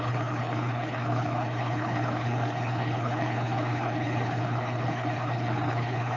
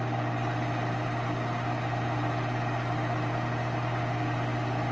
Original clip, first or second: second